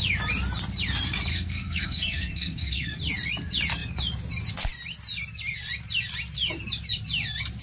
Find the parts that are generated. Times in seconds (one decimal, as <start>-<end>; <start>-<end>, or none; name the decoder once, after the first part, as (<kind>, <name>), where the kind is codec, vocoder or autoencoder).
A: 1.3-3.0 (codec, SNAC)